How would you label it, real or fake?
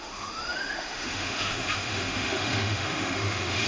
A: fake